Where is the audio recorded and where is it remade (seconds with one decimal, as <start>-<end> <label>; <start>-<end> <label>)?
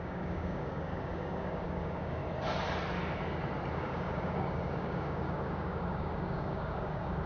0.0-2.2 remade; 2.2-3.7 recorded; 3.7-7.3 remade